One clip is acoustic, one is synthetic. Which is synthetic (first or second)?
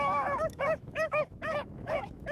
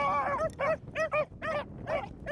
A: first